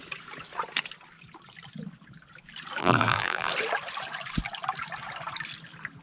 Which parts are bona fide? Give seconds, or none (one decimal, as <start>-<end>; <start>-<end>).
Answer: 0.0-2.8; 3.5-6.0